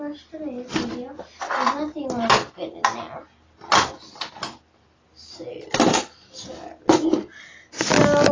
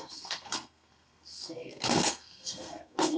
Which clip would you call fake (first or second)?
second